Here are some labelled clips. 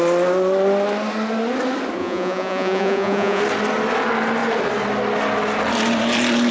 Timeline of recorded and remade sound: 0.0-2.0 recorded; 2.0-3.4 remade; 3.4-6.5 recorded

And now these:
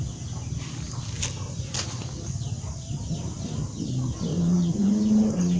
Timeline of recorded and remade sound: 0.0-4.3 recorded; 4.3-4.9 remade; 4.9-5.6 recorded

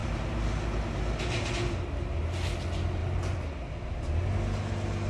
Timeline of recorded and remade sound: 0.0-5.1 recorded

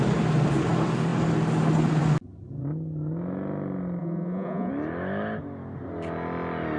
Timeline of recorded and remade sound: 0.0-4.0 recorded; 4.0-4.7 remade; 4.7-6.8 recorded

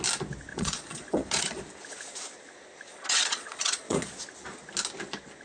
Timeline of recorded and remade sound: 0.0-0.5 recorded; 0.5-1.6 remade; 1.6-2.9 recorded; 2.9-4.1 remade; 4.1-5.4 recorded